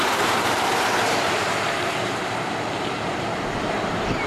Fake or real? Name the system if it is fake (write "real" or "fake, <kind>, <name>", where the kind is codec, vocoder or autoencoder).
fake, vocoder, BigVGAN v2